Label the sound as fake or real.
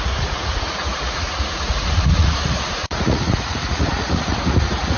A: fake